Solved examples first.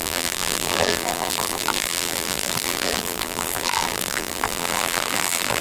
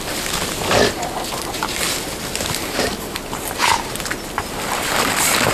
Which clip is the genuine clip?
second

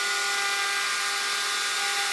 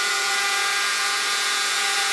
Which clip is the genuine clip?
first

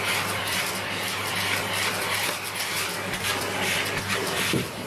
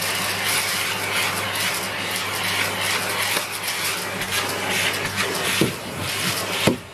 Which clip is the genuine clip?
second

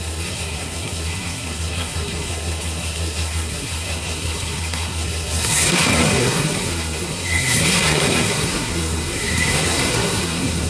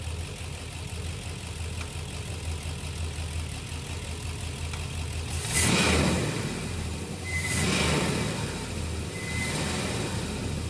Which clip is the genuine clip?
second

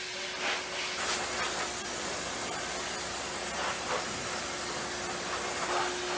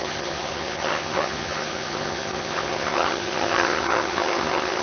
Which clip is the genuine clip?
first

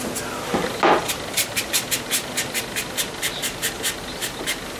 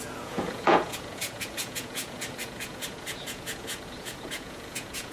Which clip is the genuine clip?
first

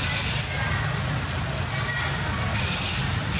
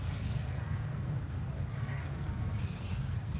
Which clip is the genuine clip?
first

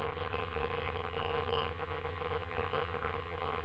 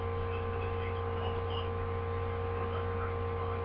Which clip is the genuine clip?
second